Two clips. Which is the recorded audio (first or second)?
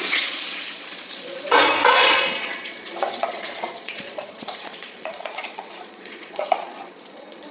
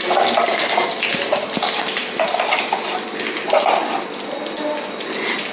second